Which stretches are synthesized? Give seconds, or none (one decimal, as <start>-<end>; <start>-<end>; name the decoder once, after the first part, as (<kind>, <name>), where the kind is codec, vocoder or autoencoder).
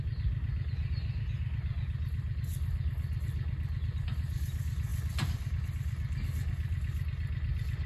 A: 4.9-5.6 (vocoder, BigVGAN v2)